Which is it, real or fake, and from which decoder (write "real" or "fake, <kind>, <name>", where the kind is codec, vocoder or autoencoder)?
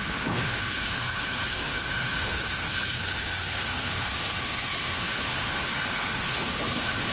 fake, codec, HILCodec